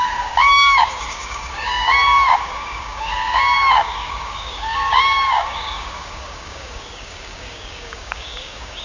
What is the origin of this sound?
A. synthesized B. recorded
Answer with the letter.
A